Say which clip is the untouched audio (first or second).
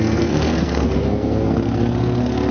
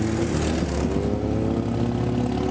second